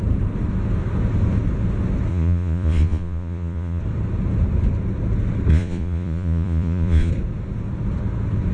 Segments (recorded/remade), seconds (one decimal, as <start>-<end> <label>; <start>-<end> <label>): 0.0-2.1 recorded; 2.1-3.8 remade; 3.8-5.5 recorded; 5.5-7.1 remade; 7.1-8.5 recorded